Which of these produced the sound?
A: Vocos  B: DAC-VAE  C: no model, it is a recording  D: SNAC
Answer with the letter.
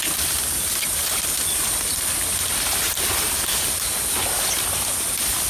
C